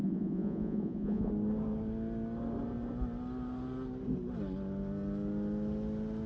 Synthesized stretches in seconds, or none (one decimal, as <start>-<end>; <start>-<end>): 0.0-1.3